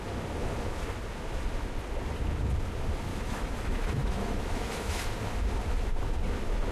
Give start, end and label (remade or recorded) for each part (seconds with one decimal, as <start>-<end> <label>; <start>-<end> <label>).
0.0-3.1 recorded; 3.1-5.0 remade; 5.0-6.7 recorded